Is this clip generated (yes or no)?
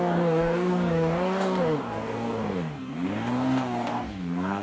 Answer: yes